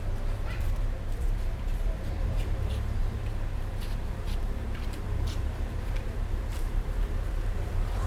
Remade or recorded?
remade